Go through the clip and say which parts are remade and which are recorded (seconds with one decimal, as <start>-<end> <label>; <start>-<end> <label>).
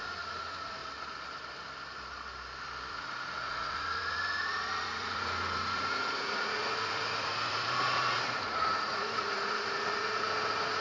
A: 0.0-0.8 remade; 0.8-2.9 recorded; 2.9-10.8 remade